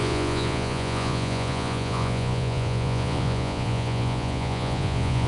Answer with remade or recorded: remade